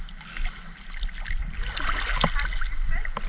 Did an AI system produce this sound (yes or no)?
no